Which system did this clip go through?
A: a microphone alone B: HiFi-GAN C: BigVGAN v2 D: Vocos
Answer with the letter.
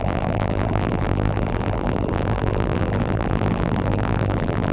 C